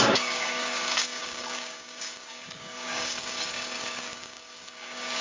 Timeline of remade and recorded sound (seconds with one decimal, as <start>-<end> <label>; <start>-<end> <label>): 0.0-5.2 remade